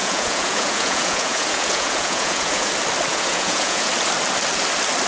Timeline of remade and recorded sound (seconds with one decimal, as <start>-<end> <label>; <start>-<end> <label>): 0.0-2.7 remade; 2.7-3.1 recorded; 3.1-3.9 remade; 3.9-5.1 recorded